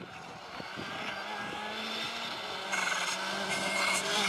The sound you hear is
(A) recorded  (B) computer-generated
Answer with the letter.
A